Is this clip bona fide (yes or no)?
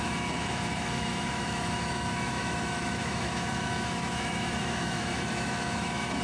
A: no